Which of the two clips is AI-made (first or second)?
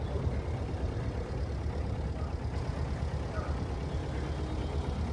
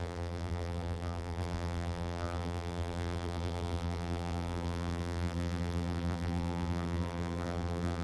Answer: second